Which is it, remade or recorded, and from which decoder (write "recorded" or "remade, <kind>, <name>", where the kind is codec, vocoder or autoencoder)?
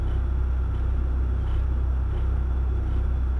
recorded